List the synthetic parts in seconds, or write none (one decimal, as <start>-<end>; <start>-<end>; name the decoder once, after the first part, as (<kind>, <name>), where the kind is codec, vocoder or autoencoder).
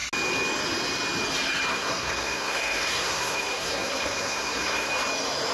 1.7-4.9 (codec, SNAC)